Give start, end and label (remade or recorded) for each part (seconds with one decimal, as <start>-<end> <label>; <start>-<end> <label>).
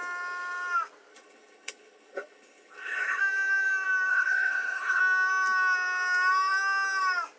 0.0-1.1 recorded; 1.1-3.2 remade; 3.2-4.1 recorded; 4.1-5.0 remade; 5.0-7.4 recorded